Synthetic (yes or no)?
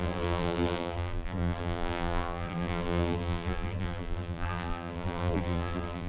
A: yes